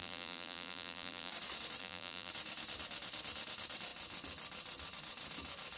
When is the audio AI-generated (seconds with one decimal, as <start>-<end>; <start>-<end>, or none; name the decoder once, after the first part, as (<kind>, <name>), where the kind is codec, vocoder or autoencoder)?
0.0-1.3 (vocoder, BigVGAN v2); 1.8-2.3